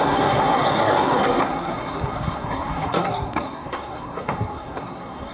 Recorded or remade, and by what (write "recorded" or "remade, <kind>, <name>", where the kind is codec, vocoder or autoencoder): remade, codec, SNAC